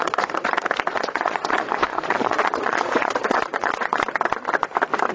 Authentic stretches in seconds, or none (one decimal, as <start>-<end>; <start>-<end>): 0.5-0.9; 4.0-5.1